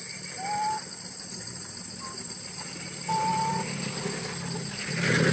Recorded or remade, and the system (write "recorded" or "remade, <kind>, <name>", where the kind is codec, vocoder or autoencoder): recorded